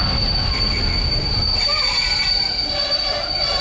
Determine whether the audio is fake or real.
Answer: real